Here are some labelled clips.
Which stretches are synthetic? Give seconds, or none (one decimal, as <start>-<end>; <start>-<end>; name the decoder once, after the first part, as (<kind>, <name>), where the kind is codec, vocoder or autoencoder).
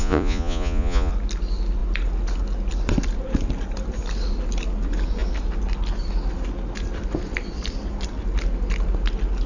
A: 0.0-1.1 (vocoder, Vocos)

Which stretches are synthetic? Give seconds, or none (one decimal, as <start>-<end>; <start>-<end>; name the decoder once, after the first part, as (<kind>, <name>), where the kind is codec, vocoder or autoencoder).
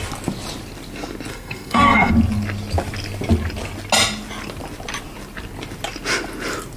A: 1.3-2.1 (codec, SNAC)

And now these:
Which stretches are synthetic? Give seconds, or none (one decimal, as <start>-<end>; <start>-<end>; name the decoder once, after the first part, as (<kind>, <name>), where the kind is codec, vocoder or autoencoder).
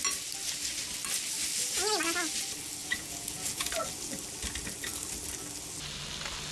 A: 2.8-3.7 (vocoder, Vocos)